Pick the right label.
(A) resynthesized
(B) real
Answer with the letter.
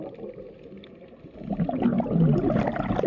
B